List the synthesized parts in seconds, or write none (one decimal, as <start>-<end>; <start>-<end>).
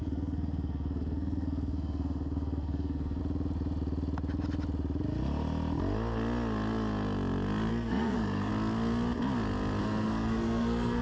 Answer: 0.0-3.2; 7.7-8.5; 9.8-11.0